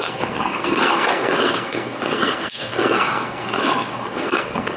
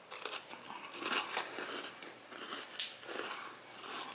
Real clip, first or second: second